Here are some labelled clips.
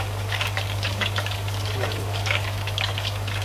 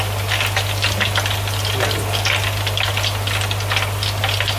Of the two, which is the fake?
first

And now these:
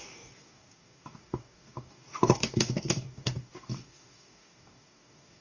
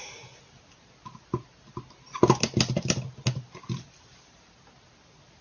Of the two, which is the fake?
first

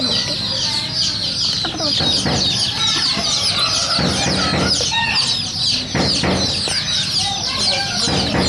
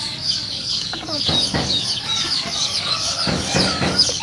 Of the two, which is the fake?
second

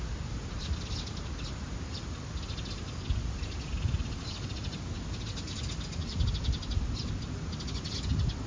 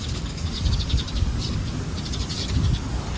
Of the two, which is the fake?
second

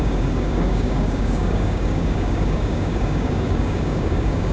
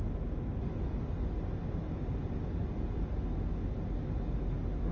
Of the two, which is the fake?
first